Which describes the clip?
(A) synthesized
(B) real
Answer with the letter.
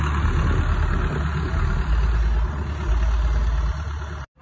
B